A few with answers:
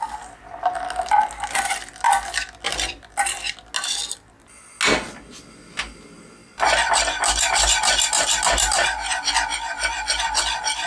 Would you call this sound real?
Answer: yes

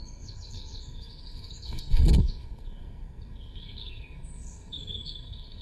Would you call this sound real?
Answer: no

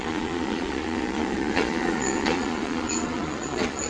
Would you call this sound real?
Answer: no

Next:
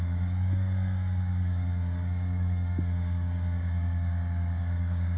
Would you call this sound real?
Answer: no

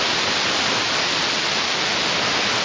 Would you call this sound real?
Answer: yes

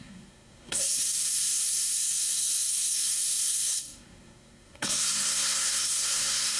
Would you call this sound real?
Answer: no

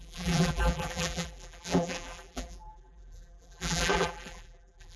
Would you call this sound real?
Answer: no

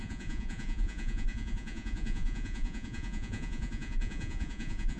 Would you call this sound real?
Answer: no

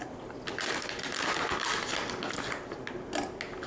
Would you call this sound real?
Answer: yes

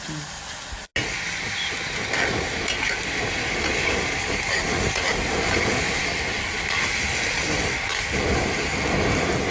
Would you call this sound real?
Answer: yes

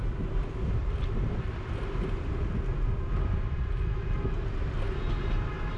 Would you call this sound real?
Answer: yes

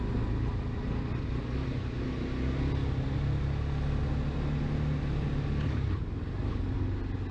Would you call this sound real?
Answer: yes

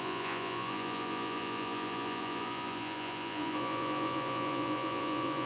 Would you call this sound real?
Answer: no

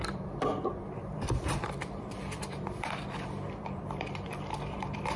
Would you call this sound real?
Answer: no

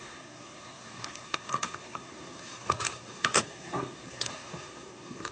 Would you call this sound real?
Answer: no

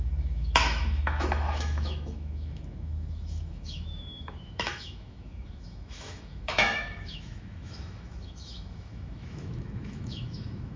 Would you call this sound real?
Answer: no